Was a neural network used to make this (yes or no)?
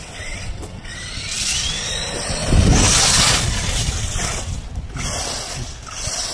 no